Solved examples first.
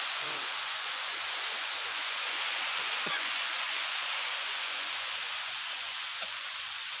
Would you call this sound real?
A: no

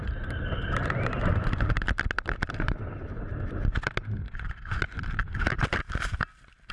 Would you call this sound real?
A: yes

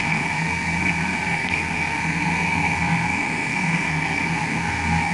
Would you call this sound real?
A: no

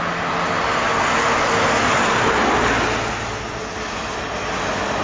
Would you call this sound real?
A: yes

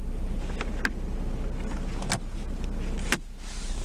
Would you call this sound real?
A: yes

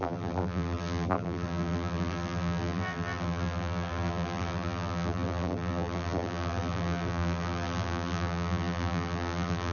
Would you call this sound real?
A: no